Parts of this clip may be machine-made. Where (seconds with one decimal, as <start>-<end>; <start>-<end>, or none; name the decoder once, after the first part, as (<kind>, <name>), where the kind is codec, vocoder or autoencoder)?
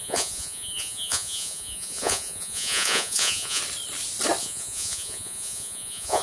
0.0-3.6 (vocoder, Vocos); 4.4-6.2